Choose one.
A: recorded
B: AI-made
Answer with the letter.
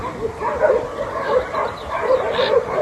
A